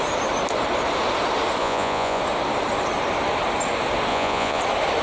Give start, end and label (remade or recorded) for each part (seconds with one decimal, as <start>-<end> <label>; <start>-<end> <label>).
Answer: 0.0-1.6 recorded; 1.6-2.2 remade; 2.2-4.1 recorded; 4.1-4.6 remade; 4.6-5.0 recorded